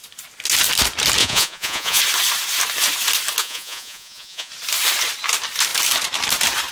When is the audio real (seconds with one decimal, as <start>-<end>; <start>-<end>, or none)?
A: 0.0-1.2; 2.0-3.4; 4.5-6.7